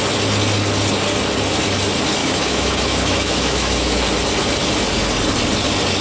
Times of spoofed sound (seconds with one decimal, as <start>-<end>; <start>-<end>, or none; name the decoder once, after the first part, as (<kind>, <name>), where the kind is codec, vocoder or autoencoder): 2.2-4.0 (autoencoder, DAC-VAE)